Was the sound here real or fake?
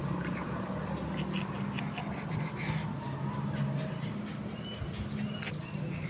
real